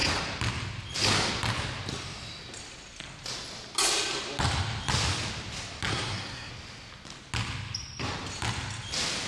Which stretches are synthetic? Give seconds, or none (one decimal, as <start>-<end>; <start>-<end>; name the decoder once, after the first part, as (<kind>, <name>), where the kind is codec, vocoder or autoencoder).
5.9-6.5 (codec, SNAC)